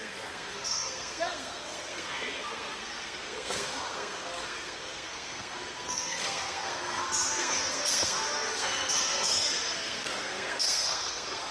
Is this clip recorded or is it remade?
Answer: remade